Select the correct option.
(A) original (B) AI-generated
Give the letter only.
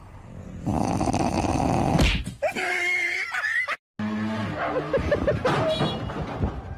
A